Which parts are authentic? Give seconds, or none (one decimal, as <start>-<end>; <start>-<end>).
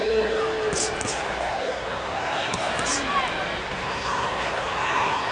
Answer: 0.4-1.1; 2.7-3.6